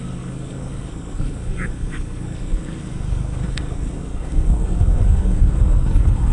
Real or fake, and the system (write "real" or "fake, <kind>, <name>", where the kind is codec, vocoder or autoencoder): fake, codec, SNAC